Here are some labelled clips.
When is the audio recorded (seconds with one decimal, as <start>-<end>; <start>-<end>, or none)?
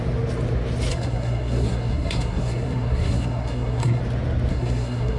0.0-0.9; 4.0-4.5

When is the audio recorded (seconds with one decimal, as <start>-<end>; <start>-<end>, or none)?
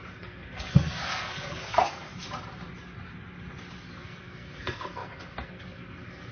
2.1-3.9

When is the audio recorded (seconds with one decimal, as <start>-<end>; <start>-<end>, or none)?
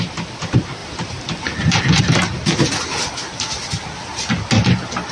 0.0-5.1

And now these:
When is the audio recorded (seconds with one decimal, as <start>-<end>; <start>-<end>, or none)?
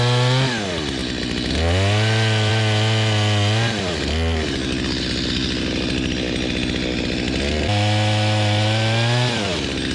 0.0-9.9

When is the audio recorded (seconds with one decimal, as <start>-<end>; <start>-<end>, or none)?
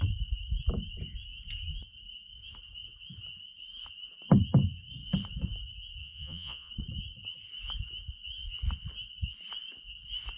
0.0-6.0; 6.7-10.4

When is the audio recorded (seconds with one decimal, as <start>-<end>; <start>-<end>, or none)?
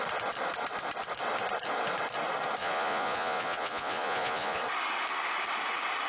0.0-2.6; 4.6-6.1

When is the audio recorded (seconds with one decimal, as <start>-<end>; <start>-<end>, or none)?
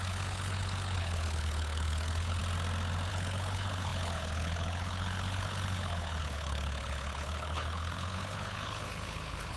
2.4-3.1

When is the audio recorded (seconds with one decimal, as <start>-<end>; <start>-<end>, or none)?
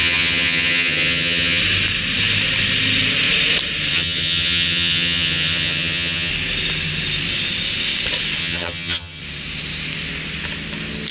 1.6-3.9; 6.3-8.4; 9.2-11.1